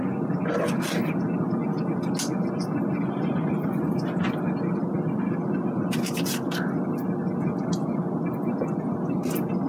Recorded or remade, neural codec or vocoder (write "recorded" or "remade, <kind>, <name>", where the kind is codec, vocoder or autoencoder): recorded